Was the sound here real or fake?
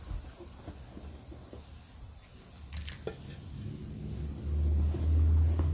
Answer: real